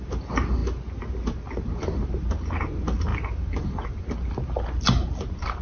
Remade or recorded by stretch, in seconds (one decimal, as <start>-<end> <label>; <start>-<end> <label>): 0.0-5.6 recorded